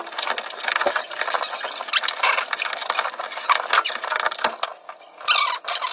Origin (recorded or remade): recorded